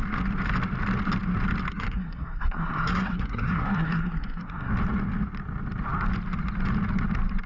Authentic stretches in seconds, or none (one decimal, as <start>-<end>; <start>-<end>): 0.0-1.7; 4.7-7.5